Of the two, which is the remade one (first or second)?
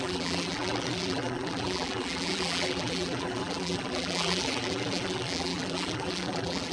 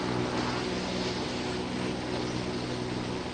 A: first